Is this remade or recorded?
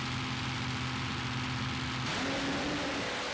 recorded